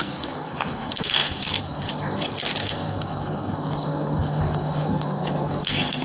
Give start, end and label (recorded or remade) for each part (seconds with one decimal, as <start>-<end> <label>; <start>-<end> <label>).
0.0-6.0 remade